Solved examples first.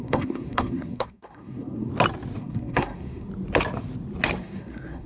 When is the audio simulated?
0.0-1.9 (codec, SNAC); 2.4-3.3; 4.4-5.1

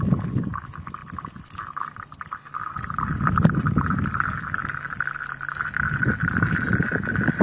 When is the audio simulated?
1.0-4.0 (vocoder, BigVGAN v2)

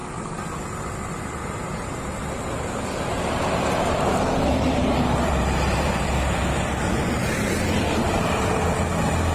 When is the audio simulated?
1.4-6.1 (vocoder, BigVGAN v2); 7.0-8.6